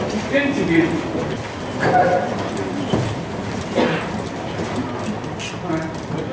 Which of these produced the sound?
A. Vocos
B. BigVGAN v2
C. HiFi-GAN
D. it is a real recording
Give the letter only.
D